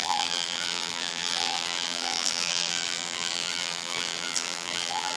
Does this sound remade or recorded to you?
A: remade